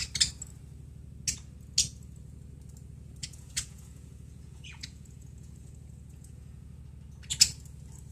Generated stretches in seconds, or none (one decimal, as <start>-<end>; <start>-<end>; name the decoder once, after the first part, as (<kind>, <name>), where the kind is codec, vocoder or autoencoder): 3.2-6.8 (vocoder, Vocos)